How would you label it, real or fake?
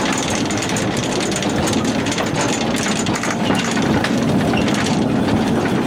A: real